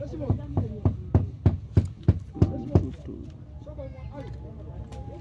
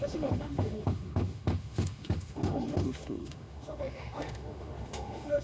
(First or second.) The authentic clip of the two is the first